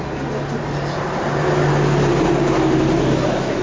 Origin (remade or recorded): recorded